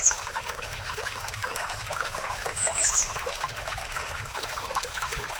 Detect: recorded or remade remade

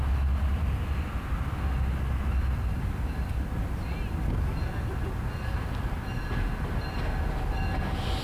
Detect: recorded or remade recorded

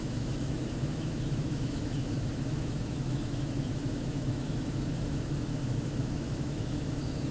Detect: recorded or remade remade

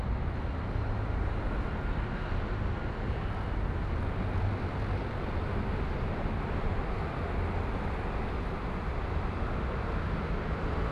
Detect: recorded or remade recorded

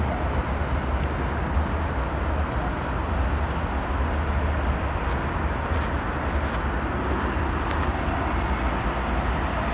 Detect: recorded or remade recorded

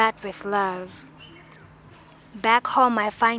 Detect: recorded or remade recorded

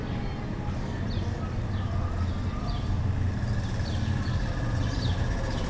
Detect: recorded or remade recorded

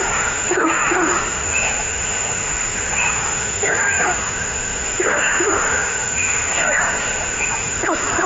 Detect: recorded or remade remade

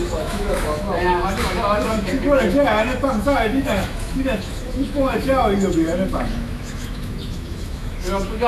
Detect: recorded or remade remade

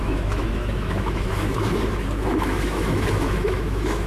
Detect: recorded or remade remade